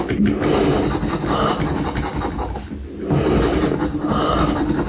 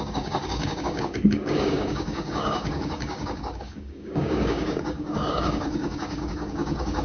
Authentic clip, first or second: first